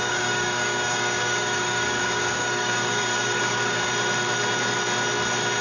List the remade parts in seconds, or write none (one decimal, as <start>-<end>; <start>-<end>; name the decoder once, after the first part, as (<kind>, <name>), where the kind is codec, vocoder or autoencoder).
0.0-3.9 (codec, DAC)